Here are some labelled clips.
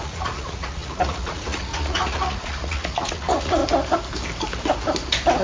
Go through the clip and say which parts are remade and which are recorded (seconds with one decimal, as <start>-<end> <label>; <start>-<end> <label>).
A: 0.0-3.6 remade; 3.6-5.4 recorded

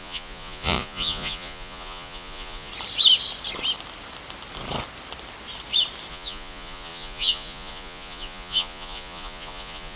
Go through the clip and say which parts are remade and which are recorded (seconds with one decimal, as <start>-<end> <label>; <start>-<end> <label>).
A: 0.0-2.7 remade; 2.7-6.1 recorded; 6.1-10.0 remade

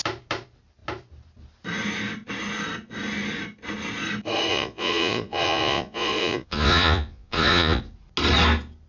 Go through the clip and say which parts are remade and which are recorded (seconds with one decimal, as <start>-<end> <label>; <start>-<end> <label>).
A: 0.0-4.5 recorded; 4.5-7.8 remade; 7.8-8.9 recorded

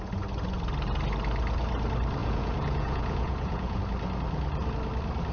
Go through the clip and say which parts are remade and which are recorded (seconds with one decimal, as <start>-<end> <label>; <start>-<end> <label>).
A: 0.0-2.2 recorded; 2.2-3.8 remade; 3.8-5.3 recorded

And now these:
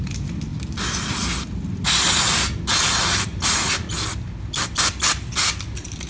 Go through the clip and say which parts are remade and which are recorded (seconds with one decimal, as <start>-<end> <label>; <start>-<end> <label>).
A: 0.0-6.1 recorded

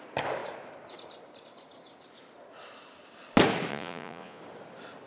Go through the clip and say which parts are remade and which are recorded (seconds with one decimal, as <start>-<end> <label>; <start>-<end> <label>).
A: 0.0-3.7 recorded; 3.7-4.4 remade; 4.4-5.1 recorded